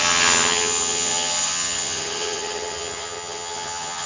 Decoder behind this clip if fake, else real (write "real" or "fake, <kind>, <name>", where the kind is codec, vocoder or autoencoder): fake, vocoder, HiFi-GAN